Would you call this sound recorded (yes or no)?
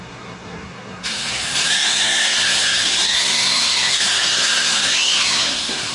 no